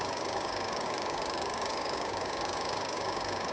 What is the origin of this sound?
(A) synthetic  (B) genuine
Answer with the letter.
A